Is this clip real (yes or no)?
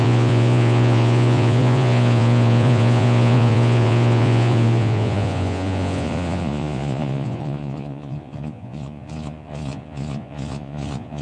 no